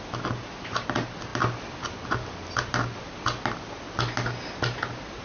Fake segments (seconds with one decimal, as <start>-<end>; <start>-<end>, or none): none